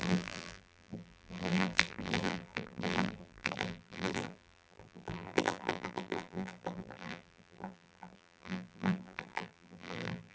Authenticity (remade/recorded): remade